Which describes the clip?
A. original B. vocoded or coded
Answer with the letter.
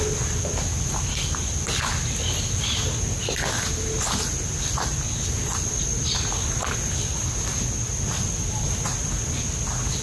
A